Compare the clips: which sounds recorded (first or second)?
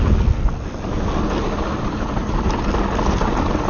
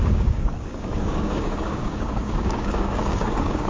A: first